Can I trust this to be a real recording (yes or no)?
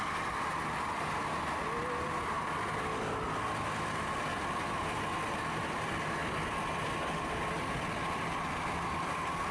yes